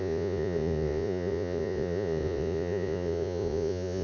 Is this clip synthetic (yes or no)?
yes